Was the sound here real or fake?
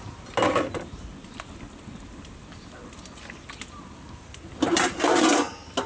real